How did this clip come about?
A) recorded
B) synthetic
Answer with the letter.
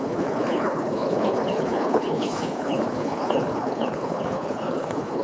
B